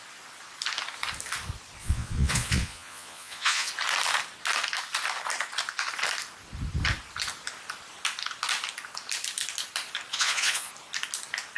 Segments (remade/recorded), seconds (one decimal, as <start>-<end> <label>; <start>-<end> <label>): 0.0-1.8 recorded; 1.8-3.7 remade; 3.7-10.1 recorded; 10.1-10.7 remade; 10.7-11.6 recorded